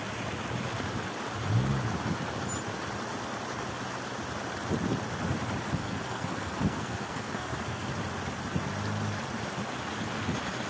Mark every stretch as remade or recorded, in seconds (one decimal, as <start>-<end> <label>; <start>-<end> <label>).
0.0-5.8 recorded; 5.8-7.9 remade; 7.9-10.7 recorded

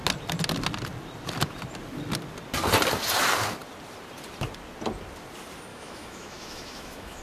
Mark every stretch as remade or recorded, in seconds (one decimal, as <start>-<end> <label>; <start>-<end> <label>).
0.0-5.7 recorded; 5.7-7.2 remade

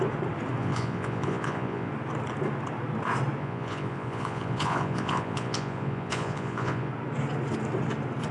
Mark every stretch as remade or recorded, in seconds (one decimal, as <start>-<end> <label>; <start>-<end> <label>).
0.0-0.6 recorded; 0.6-1.9 remade; 1.9-3.4 recorded; 3.4-6.9 remade; 6.9-8.3 recorded

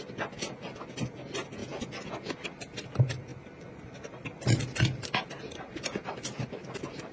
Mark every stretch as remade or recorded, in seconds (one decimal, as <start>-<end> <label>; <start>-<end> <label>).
0.0-3.3 recorded; 3.3-5.4 remade; 5.4-7.1 recorded

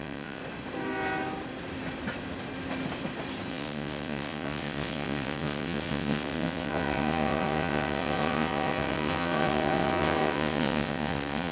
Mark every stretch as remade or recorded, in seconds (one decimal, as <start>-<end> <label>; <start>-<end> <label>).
0.0-0.4 remade; 0.4-3.5 recorded; 3.5-11.5 remade

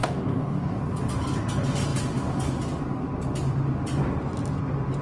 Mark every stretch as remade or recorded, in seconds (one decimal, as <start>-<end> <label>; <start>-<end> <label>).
0.0-0.8 remade; 0.8-5.0 recorded

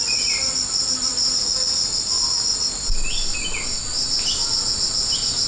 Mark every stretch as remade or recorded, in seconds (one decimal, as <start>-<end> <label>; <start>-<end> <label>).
0.0-5.5 recorded

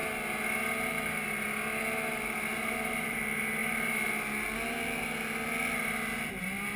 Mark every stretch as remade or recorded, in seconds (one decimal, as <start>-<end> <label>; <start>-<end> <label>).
0.0-2.5 recorded; 2.5-3.2 remade; 3.2-3.6 recorded; 3.6-4.1 remade; 4.1-6.8 recorded